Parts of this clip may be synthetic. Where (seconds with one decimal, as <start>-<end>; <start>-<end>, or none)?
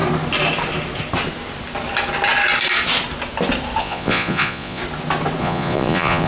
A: 3.8-4.8; 5.4-6.3